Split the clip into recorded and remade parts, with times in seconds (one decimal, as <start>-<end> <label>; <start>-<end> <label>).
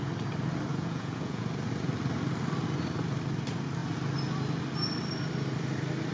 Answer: 0.0-0.7 recorded; 0.7-1.4 remade; 1.4-6.1 recorded